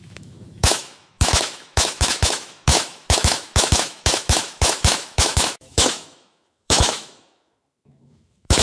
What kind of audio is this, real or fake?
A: fake